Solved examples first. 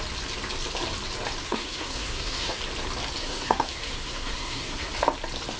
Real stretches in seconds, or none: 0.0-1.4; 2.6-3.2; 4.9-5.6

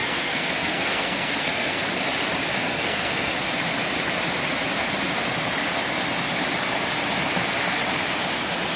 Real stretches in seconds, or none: 1.8-2.5; 3.3-8.8

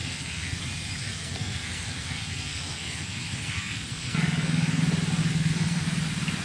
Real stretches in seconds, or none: 0.6-1.0; 4.8-5.2; 6.0-6.4